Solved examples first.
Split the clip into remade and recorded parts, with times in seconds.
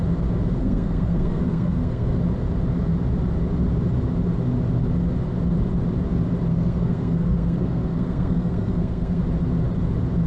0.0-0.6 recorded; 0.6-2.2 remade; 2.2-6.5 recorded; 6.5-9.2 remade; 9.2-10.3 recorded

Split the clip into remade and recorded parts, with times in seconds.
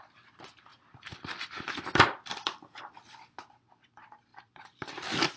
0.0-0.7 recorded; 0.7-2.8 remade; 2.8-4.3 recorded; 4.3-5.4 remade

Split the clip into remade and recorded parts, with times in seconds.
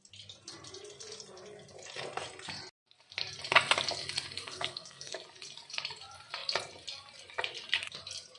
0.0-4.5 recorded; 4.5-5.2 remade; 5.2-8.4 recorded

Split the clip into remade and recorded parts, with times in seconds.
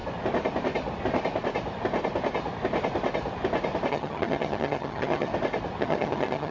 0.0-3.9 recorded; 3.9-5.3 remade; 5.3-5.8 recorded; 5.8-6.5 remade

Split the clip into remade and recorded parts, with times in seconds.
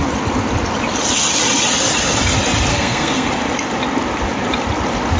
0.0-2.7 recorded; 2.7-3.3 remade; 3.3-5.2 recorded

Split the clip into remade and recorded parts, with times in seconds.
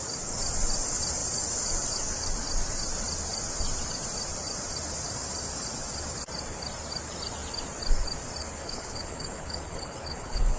0.0-8.4 recorded; 8.4-10.6 remade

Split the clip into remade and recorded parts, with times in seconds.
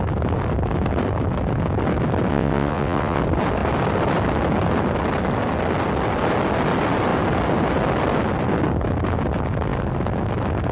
0.0-2.3 recorded; 2.3-3.2 remade; 3.2-10.7 recorded